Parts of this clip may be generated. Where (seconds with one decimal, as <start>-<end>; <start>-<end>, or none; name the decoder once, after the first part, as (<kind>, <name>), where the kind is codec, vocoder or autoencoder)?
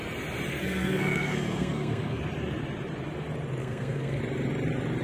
0.5-2.2 (codec, SNAC); 3.6-4.2